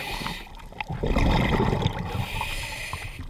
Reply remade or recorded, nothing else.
recorded